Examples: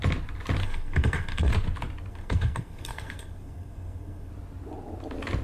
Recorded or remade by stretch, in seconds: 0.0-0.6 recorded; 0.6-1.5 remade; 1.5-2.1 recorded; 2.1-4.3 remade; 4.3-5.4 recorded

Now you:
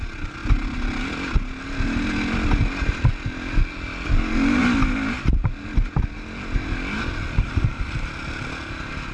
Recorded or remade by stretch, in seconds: 0.0-9.1 recorded

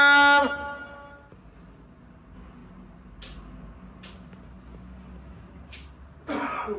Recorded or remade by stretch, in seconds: 0.0-6.8 recorded

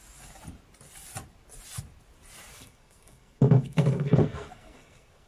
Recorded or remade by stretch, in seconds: 0.0-2.5 recorded; 2.5-5.3 remade

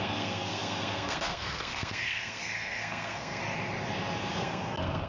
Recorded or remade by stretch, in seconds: 0.0-3.4 remade; 3.4-4.3 recorded; 4.3-5.1 remade

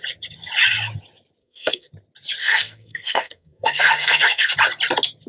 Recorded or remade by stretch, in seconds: 0.0-1.4 recorded; 1.4-1.9 remade; 1.9-2.4 recorded; 2.4-4.5 remade; 4.5-5.3 recorded

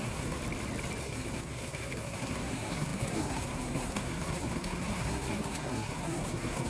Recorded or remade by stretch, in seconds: 0.0-0.4 remade; 0.4-1.0 recorded; 1.0-6.7 remade

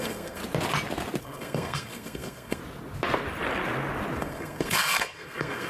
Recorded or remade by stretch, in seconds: 0.0-0.4 remade; 0.4-1.2 recorded; 1.2-2.6 remade; 2.6-4.2 recorded; 4.2-5.7 remade